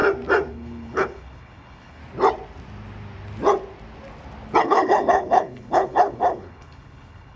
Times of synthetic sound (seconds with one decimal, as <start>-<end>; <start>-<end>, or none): 0.5-2.0; 4.6-7.4